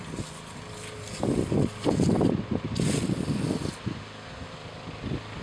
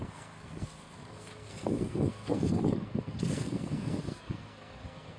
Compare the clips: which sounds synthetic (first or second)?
second